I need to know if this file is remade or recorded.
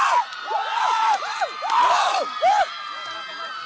recorded